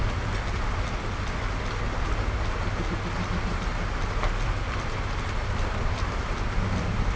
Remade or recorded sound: recorded